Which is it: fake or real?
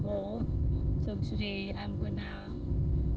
fake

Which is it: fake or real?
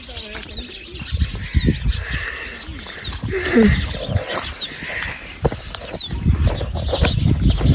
real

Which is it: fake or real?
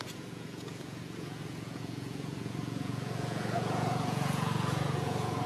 fake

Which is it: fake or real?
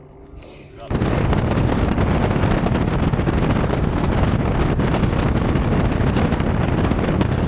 real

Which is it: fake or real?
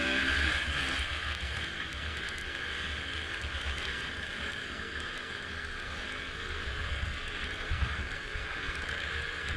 fake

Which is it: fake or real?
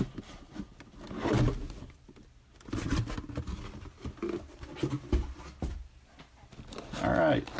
real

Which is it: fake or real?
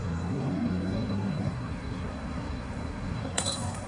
fake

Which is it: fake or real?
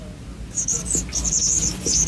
real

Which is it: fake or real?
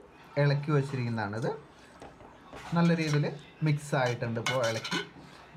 real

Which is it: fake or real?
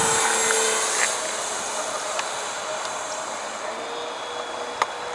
real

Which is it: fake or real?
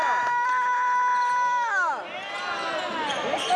real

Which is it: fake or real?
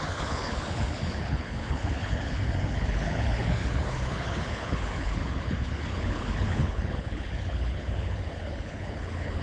fake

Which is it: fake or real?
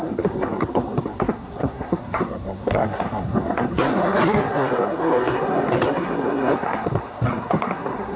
fake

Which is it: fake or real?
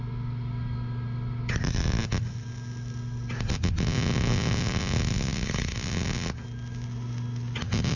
real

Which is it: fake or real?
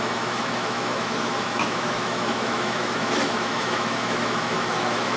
fake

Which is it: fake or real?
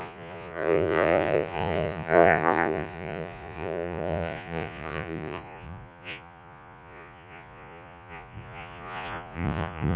fake